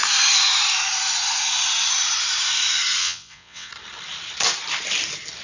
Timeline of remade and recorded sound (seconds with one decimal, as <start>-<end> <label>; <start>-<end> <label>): 0.0-3.0 recorded; 3.0-3.7 remade; 3.7-5.4 recorded